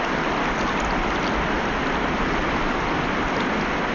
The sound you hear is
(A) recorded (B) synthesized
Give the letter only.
A